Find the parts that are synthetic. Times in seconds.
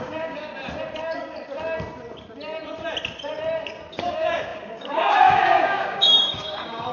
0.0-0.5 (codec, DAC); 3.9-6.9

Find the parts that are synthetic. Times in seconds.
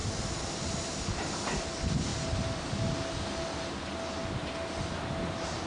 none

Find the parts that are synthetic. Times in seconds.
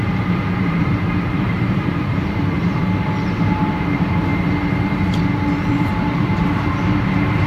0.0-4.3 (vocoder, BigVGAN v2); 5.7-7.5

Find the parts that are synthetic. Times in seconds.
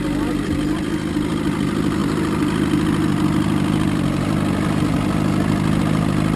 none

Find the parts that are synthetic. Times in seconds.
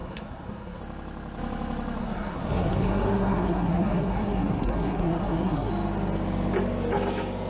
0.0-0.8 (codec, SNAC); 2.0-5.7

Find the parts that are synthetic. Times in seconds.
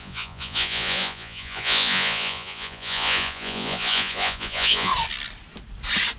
0.0-4.9 (vocoder, Vocos)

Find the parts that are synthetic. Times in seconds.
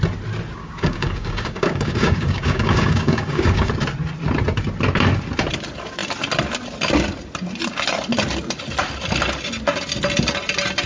0.6-3.7 (codec, DAC)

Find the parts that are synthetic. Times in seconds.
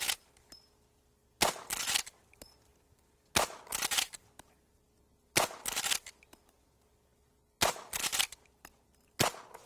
none